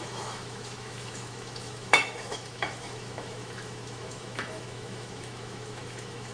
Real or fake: fake